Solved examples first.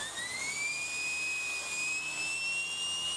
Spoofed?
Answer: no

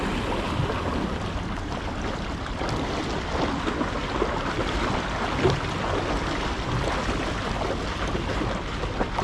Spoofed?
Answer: no